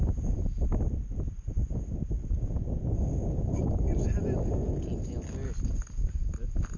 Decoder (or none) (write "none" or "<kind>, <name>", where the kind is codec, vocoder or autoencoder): none